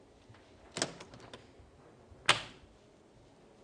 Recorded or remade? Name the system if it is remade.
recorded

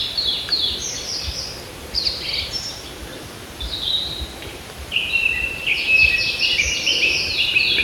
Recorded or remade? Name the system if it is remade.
remade, vocoder, BigVGAN v2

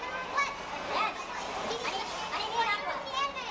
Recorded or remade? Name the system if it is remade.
recorded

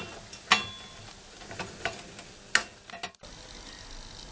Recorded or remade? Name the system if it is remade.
recorded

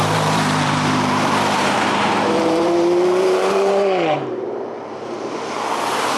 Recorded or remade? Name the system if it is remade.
remade, vocoder, BigVGAN v2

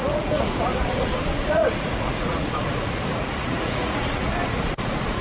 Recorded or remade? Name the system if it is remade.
remade, vocoder, Vocos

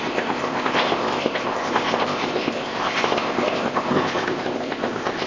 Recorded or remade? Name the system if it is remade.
remade, codec, ZipCodec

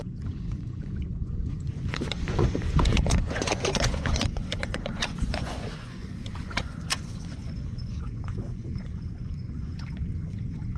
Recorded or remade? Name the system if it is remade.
remade, vocoder, Vocos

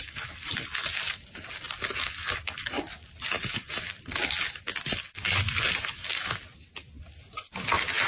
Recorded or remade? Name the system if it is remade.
recorded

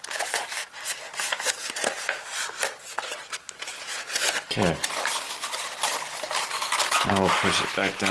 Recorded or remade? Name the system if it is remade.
recorded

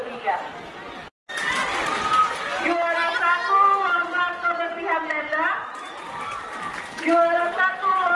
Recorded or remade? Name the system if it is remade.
recorded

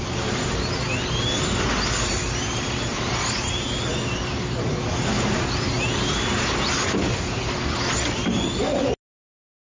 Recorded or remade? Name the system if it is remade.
recorded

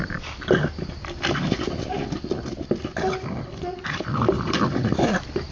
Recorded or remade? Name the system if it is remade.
recorded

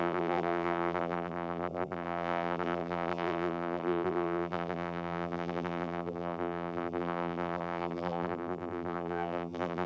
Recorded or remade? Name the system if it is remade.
remade, vocoder, BigVGAN v2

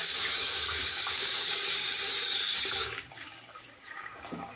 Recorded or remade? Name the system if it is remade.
remade, codec, DAC